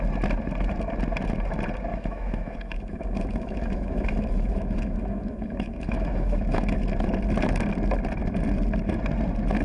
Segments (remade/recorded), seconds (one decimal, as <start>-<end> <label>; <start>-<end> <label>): 0.0-1.9 recorded; 1.9-6.8 remade; 6.8-9.6 recorded